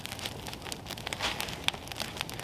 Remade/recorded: recorded